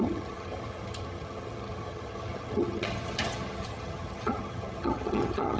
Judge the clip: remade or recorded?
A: remade